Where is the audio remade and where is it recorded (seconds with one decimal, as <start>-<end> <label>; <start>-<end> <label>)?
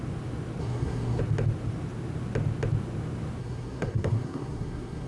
0.0-0.6 recorded; 0.6-1.2 remade; 1.2-3.4 recorded; 3.4-5.1 remade